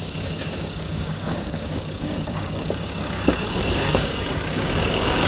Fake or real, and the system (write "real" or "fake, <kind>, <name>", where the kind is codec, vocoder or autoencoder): fake, codec, DAC